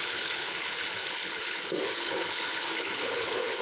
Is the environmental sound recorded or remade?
remade